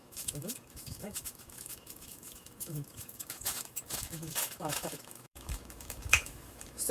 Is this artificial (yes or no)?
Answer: yes